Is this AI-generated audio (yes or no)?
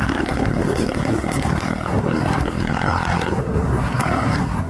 yes